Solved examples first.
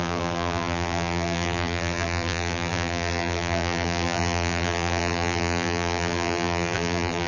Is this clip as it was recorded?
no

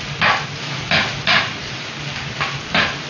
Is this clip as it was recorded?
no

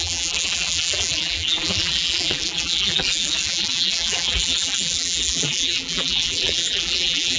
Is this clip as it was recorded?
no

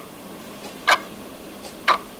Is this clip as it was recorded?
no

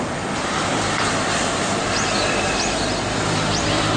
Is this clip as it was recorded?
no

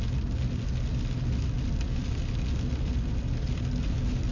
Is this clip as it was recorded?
yes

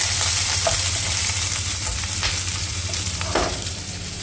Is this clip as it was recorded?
no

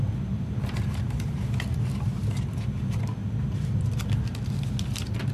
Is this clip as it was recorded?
yes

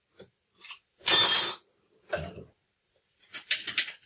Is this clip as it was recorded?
no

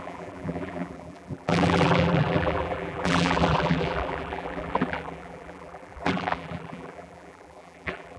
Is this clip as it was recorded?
no